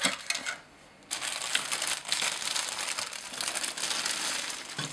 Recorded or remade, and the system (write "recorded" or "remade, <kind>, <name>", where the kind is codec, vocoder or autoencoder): recorded